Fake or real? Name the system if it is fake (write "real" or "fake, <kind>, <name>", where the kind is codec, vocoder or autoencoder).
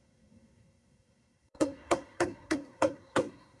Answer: fake, codec, SNAC